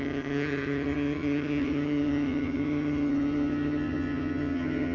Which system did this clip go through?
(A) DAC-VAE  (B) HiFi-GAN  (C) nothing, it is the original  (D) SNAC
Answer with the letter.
B